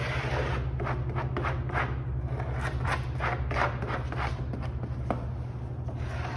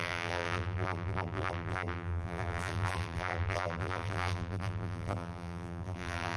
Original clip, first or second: first